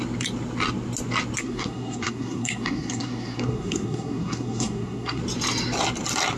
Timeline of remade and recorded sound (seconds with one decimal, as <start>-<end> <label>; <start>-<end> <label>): 0.0-1.4 recorded; 1.4-5.2 remade; 5.2-6.4 recorded